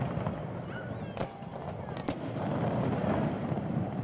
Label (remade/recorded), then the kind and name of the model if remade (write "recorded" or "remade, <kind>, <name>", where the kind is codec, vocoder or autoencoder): recorded